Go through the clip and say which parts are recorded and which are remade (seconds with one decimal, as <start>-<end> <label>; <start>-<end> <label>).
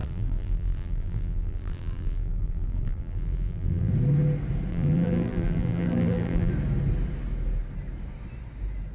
0.0-3.9 remade; 3.9-4.7 recorded; 4.7-6.5 remade; 6.5-8.9 recorded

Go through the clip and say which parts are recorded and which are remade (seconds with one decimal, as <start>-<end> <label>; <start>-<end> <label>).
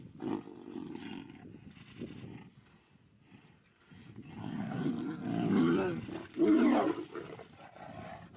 0.0-4.4 recorded; 4.4-4.9 remade; 4.9-8.4 recorded